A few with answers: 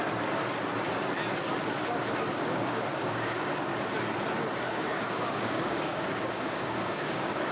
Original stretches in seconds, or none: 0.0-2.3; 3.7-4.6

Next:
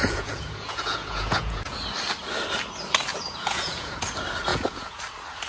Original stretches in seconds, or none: 1.8-3.1; 3.9-4.5; 5.0-5.5

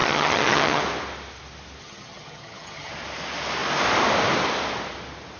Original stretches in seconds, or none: 0.8-1.8; 2.9-5.4

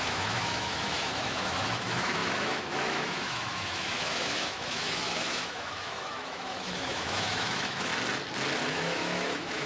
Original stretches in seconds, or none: 7.9-8.7